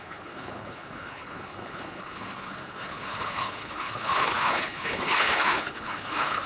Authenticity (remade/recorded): remade